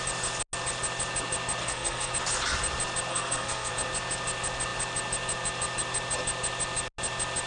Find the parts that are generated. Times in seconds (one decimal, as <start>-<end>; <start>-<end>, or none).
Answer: 1.6-2.1; 3.1-3.7